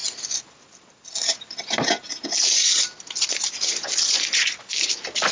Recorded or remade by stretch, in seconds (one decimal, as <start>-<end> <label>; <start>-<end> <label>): 0.0-5.3 recorded